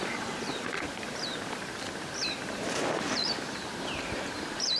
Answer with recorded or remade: remade